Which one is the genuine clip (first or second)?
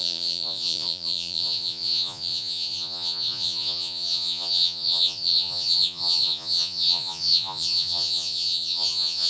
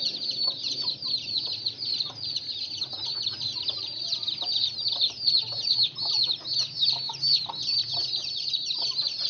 second